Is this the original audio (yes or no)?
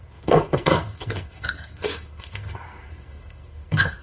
no